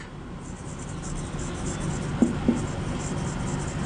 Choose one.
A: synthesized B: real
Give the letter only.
B